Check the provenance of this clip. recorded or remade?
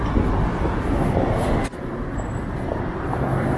recorded